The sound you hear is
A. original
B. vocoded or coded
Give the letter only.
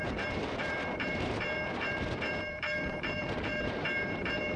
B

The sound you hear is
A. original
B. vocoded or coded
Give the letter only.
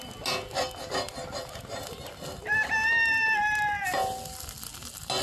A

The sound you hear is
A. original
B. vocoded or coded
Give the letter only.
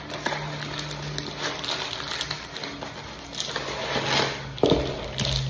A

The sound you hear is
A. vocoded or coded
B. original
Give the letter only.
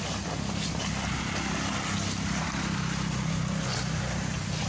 B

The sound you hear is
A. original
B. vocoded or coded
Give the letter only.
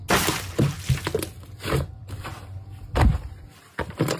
A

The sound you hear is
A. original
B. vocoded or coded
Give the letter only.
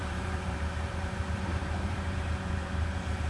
B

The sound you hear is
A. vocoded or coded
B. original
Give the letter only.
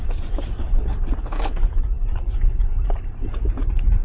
A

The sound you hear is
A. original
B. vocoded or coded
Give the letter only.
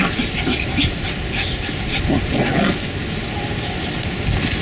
A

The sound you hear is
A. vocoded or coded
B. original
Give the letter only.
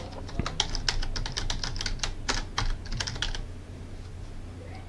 B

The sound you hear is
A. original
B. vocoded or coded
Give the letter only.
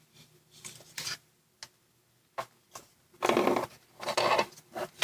A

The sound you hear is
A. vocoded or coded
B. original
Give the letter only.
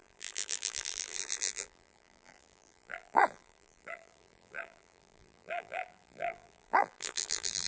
A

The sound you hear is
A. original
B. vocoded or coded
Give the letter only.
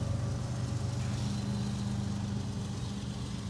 A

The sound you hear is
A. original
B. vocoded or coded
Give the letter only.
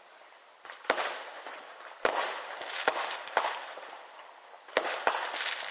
B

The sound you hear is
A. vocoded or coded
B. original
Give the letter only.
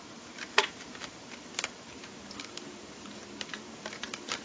A